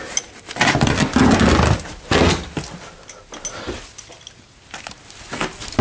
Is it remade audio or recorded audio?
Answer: recorded